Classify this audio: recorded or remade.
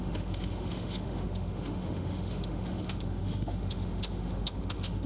remade